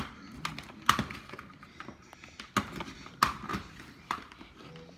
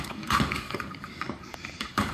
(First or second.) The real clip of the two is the first